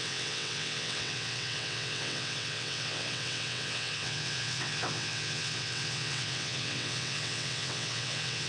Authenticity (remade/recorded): remade